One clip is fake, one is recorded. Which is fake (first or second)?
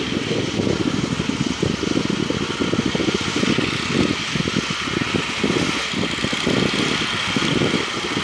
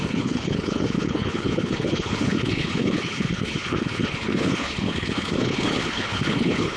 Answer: second